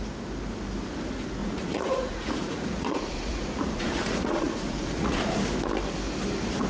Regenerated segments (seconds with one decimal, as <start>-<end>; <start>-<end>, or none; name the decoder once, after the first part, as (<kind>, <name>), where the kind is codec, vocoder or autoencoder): 1.4-5.4 (vocoder, Vocos)